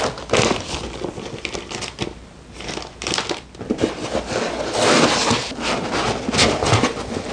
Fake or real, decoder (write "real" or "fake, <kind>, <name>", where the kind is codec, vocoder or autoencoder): real